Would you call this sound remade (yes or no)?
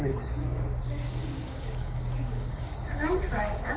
yes